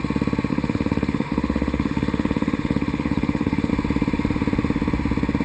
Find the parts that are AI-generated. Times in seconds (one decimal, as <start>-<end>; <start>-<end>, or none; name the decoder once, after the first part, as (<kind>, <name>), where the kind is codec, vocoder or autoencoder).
0.5-3.7 (autoencoder, DAC-VAE)